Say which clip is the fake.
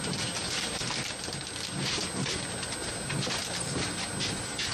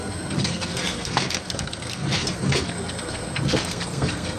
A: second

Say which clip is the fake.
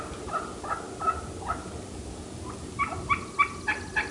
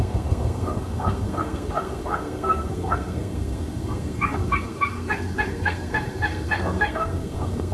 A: second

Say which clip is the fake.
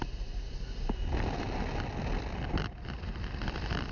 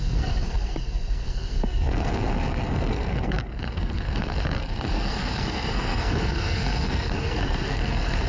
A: second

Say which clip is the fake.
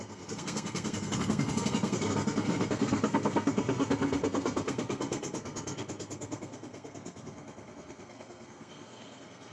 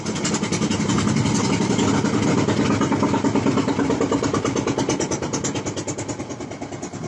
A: first